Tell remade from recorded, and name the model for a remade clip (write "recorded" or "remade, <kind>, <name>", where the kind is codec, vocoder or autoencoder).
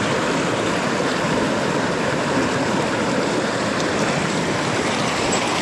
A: remade, vocoder, BigVGAN v2